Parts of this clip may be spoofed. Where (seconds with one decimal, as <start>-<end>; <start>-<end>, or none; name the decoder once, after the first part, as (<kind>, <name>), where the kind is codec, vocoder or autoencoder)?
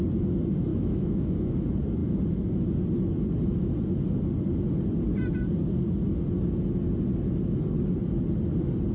0.7-1.5 (autoencoder, DAC-VAE)